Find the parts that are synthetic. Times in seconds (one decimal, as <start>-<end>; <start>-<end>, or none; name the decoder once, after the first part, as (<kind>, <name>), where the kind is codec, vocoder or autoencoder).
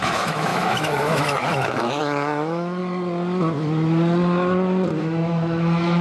0.0-2.8 (autoencoder, DAC-VAE); 5.0-6.0